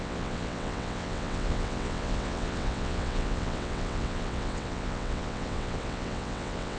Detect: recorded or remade remade